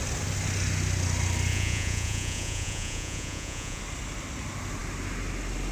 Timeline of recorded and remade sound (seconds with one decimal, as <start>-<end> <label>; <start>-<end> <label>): 0.0-1.5 recorded; 1.5-3.8 remade; 3.8-5.7 recorded